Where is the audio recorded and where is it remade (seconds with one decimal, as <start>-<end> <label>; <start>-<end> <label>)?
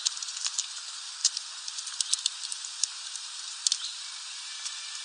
0.0-5.0 remade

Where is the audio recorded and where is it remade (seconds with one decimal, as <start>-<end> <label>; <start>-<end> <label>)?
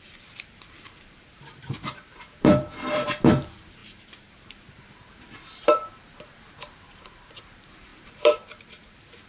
0.0-9.3 remade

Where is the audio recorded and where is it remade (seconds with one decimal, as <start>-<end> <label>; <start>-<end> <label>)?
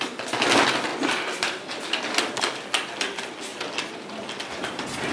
0.0-0.9 recorded; 0.9-1.8 remade; 1.8-3.5 recorded; 3.5-4.2 remade; 4.2-5.1 recorded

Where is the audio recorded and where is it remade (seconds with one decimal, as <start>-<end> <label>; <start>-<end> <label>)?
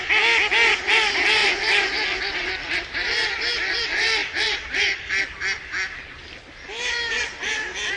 0.0-1.4 recorded; 1.4-3.8 remade; 3.8-4.2 recorded; 4.2-5.2 remade; 5.2-8.0 recorded